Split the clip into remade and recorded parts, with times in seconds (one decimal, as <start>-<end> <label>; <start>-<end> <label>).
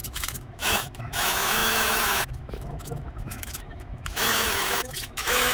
0.0-5.5 remade